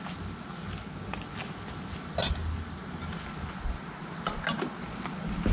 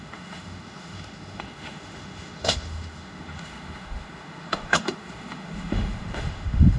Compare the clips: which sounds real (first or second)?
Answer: first